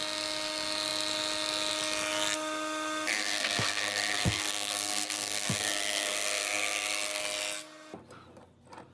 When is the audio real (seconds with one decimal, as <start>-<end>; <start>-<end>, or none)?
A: 0.0-3.1; 7.2-8.9